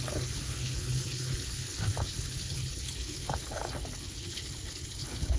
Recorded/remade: remade